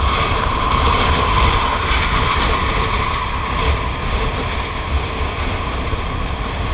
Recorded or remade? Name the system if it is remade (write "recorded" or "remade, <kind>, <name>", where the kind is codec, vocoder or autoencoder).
recorded